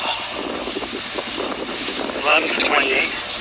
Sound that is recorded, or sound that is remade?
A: recorded